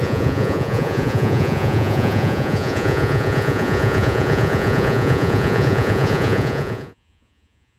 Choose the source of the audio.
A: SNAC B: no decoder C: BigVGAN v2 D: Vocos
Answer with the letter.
D